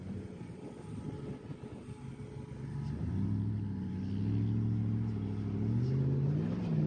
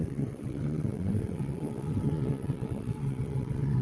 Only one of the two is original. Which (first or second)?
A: first